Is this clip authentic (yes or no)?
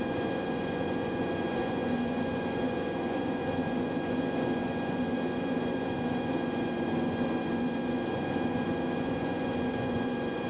no